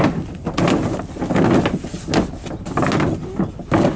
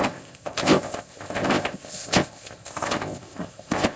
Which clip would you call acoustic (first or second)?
first